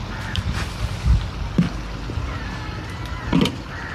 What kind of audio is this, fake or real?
real